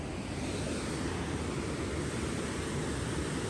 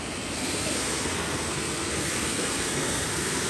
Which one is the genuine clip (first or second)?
first